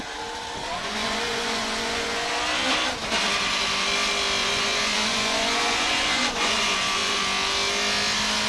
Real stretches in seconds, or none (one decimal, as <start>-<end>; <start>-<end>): 0.0-0.6; 2.3-4.4; 7.2-8.5